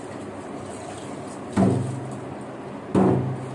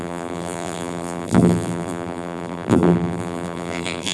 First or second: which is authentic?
first